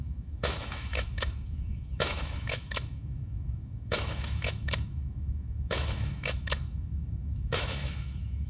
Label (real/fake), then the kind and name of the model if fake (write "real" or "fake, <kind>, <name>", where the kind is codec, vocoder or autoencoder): fake, autoencoder, DAC-VAE